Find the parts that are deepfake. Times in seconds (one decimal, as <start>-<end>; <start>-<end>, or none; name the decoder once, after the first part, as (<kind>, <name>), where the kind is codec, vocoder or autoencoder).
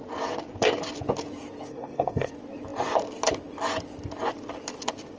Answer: 1.7-2.3 (codec, SNAC)